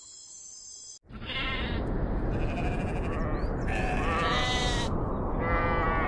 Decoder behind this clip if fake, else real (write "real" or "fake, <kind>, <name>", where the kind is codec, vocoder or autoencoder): real